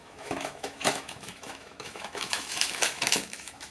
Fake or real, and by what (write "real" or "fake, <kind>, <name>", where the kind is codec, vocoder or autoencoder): fake, autoencoder, DAC-VAE